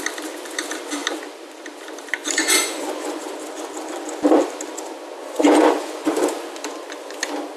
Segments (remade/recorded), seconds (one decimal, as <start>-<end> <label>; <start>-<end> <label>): 0.0-2.2 recorded; 2.2-3.2 remade; 3.2-5.2 recorded; 5.2-6.1 remade; 6.1-7.6 recorded